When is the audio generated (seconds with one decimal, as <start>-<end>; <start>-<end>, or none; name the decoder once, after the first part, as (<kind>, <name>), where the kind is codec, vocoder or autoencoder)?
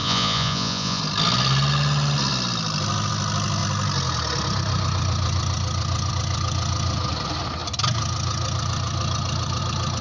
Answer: 0.0-1.0 (vocoder, Vocos)